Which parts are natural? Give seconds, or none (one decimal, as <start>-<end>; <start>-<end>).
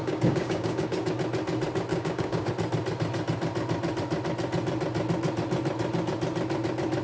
1.1-1.9; 2.5-7.0